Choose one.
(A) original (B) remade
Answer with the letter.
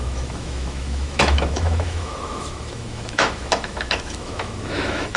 B